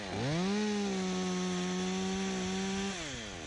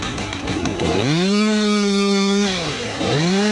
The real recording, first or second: first